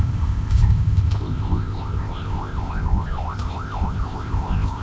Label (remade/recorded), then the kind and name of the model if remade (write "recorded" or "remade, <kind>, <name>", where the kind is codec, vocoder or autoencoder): remade, codec, ZipCodec